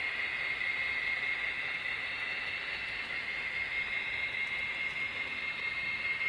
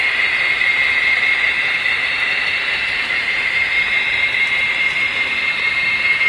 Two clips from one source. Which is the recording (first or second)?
first